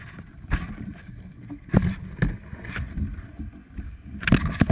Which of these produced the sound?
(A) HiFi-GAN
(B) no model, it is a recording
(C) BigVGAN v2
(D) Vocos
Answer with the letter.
B